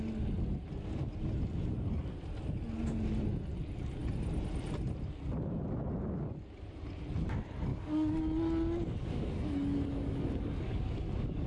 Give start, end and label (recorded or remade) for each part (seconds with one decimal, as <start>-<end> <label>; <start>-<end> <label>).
0.0-7.7 recorded; 7.7-8.2 remade; 8.2-9.0 recorded; 9.0-11.5 remade